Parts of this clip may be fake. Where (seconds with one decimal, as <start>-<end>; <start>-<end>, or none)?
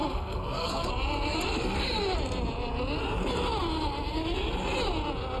0.0-0.9